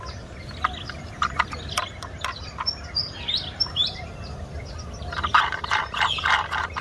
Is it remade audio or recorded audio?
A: recorded